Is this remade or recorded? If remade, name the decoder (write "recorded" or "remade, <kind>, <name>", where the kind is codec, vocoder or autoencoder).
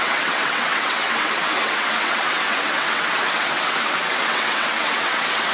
remade, vocoder, WaveNeXt